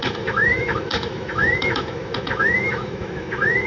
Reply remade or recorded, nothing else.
remade